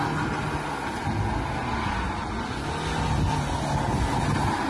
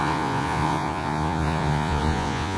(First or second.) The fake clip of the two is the second